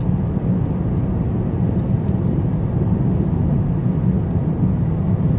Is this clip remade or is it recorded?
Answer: recorded